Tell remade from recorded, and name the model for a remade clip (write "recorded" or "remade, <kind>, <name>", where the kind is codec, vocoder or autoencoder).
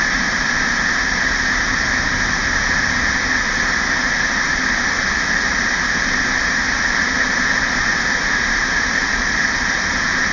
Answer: recorded